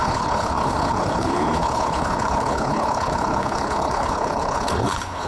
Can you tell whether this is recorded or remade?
remade